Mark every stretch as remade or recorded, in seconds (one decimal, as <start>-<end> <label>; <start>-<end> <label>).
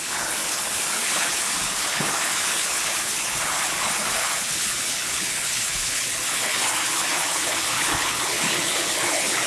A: 0.0-9.5 remade